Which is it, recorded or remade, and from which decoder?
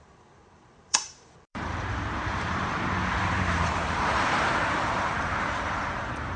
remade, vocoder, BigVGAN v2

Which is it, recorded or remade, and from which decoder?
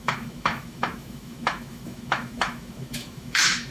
remade, autoencoder, DAC-VAE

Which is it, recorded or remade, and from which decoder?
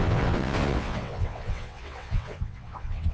remade, vocoder, WaveNeXt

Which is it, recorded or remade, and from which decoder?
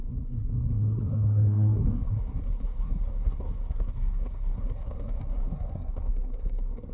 remade, codec, SNAC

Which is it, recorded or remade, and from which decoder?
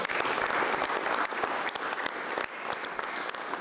recorded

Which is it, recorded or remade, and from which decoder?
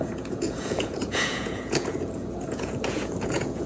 remade, vocoder, Vocos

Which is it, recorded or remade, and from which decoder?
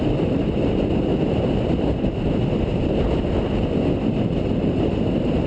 recorded